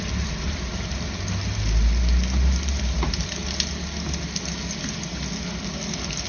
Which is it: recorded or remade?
recorded